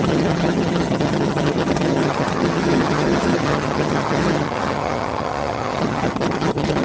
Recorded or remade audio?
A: remade